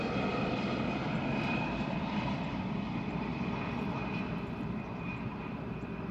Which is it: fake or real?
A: fake